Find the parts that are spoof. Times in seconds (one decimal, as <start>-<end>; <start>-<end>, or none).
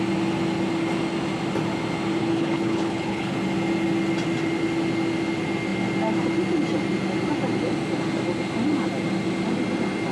2.2-3.3